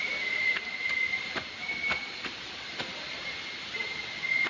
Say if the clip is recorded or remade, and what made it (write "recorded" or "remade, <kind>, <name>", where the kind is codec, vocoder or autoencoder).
recorded